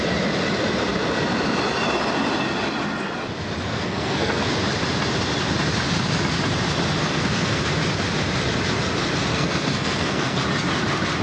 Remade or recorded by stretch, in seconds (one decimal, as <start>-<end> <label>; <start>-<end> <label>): 0.0-3.7 recorded; 3.7-4.5 remade; 4.5-7.0 recorded; 7.0-7.6 remade; 7.6-9.3 recorded; 9.3-10.4 remade; 10.4-11.2 recorded